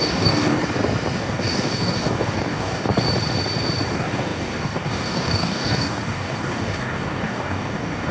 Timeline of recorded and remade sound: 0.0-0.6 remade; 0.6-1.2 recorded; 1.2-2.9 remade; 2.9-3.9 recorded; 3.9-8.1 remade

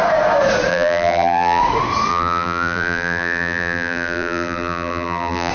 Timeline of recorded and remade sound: 0.0-0.7 recorded; 0.7-1.6 remade; 1.6-2.1 recorded; 2.1-5.5 remade

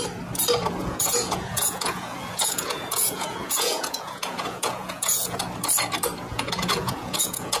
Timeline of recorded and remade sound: 0.0-0.8 recorded; 0.8-5.4 remade; 5.4-6.3 recorded; 6.3-7.6 remade

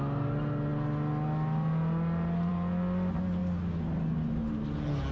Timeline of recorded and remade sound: 0.0-5.1 recorded

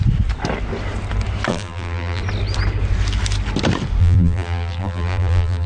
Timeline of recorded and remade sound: 0.0-1.5 recorded; 1.5-2.2 remade; 2.2-4.0 recorded; 4.0-5.7 remade

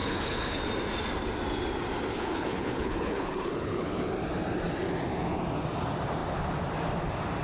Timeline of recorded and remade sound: 0.0-0.6 remade; 0.6-2.1 recorded; 2.1-4.0 remade; 4.0-7.4 recorded